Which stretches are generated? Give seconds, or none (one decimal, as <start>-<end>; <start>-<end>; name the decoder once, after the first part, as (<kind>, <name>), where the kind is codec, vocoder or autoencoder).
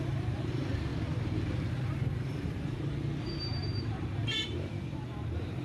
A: 0.0-0.9 (vocoder, BigVGAN v2); 1.7-5.6